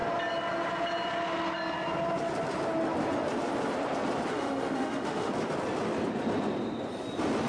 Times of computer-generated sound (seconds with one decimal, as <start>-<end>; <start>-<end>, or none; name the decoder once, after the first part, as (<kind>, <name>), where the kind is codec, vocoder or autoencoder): 4.3-5.3 (autoencoder, DAC-VAE)

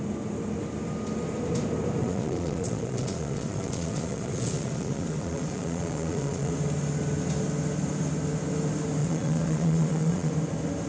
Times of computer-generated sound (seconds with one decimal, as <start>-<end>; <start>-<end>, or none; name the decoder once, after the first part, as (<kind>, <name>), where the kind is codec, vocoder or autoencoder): 2.0-6.5 (vocoder, Vocos); 9.0-10.3

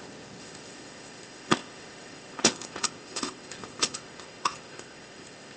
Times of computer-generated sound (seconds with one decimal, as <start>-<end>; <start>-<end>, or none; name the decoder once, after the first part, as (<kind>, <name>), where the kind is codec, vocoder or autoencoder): 0.0-5.6 (codec, ZipCodec)